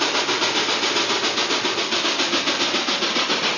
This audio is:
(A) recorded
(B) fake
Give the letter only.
A